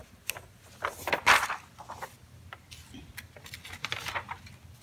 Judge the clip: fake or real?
real